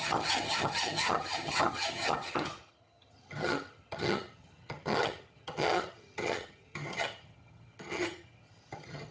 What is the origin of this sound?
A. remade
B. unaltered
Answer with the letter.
A